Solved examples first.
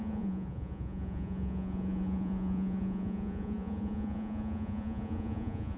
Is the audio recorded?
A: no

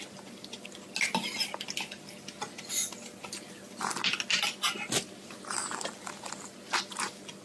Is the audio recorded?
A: yes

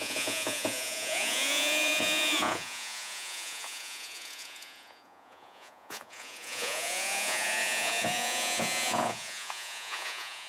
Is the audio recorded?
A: no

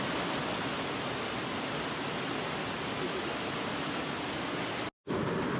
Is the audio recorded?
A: yes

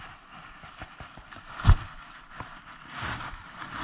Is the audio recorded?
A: no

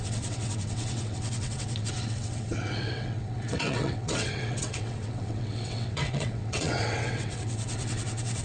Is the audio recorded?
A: no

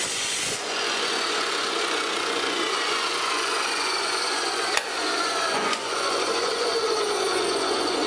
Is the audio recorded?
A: no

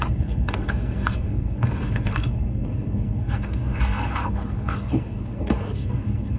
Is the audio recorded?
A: no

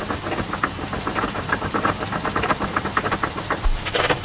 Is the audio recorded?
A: no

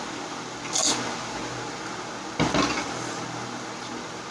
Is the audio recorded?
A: yes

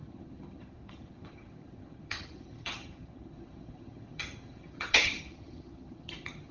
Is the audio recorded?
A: no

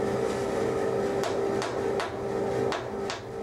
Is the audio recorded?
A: yes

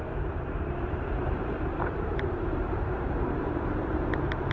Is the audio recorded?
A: no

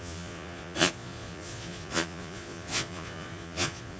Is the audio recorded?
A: no